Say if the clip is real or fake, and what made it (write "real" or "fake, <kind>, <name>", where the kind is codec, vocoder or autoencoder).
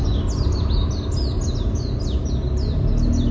real